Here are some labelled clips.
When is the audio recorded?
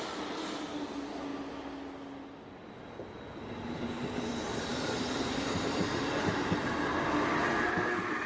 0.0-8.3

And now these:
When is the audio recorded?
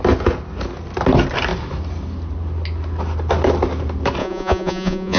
0.0-4.2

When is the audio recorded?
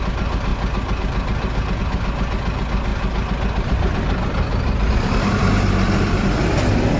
0.0-7.0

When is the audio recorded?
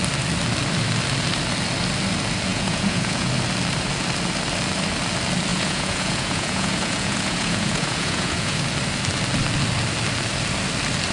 0.0-2.5; 3.3-5.5; 8.6-11.1